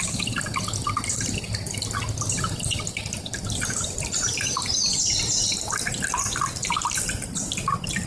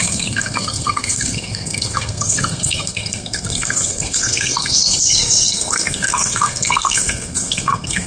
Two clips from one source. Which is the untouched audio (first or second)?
first